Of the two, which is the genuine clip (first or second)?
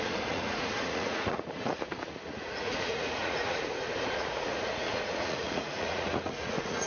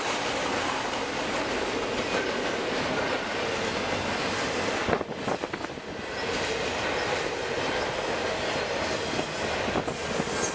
second